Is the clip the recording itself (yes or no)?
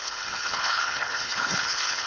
no